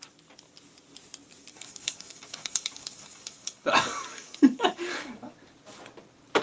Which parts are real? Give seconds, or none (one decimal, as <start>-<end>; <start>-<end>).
0.0-1.5; 5.3-6.4